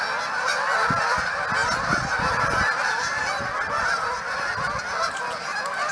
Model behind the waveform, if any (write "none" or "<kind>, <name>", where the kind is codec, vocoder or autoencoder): none